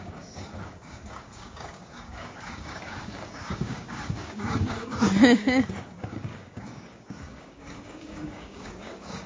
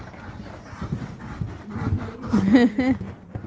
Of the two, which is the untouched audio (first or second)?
second